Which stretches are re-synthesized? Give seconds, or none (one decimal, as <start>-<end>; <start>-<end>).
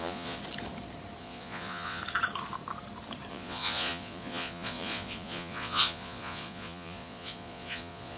0.0-0.4; 1.2-2.0; 3.3-8.2